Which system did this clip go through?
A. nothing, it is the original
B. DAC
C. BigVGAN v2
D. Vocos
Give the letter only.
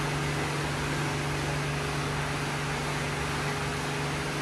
A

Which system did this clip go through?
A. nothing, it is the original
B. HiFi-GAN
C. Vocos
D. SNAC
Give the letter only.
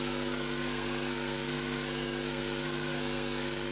D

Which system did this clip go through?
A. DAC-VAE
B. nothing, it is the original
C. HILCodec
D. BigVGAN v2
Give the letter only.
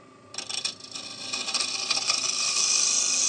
B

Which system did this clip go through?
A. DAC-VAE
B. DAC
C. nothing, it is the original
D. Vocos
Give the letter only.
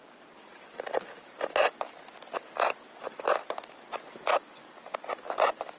C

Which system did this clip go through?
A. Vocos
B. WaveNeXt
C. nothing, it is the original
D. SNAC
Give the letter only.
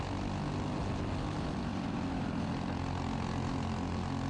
C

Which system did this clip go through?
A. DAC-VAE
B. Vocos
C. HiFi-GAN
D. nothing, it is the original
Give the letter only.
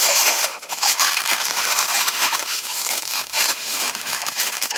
A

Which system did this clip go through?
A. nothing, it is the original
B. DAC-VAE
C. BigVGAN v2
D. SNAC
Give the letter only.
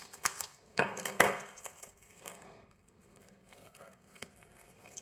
D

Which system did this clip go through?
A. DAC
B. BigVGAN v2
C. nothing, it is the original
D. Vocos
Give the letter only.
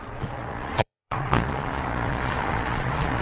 D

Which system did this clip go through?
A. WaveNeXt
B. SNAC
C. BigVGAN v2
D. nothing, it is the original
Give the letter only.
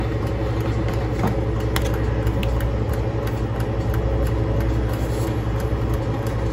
D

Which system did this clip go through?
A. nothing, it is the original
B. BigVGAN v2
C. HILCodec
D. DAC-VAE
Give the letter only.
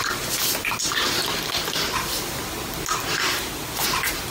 A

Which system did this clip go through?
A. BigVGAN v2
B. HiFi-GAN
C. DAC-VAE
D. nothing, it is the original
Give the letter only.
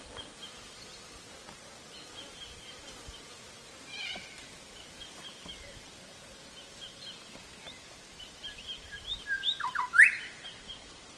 A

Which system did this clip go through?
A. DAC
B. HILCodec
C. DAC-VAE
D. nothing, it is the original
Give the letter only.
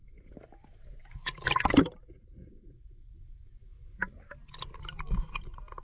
D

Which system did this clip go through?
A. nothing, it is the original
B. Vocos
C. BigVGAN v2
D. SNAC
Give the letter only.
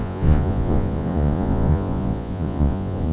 B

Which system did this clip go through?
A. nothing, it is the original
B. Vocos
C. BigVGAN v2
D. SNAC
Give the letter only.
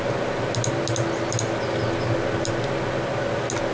A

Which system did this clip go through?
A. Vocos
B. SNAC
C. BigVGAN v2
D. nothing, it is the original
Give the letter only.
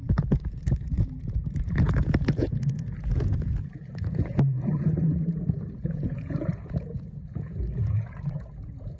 A